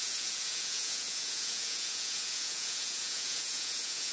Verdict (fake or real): fake